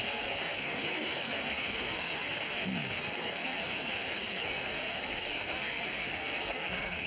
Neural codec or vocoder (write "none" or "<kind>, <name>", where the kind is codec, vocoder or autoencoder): codec, SNAC